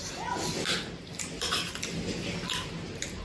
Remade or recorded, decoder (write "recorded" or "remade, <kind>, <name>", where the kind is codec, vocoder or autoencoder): recorded